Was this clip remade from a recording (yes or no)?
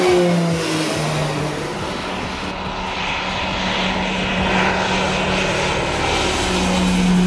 no